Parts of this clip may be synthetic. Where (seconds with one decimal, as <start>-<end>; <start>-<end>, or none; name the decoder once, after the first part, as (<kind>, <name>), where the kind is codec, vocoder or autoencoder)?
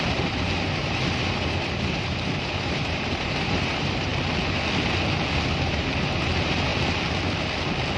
0.0-4.1 (vocoder, BigVGAN v2); 5.6-6.7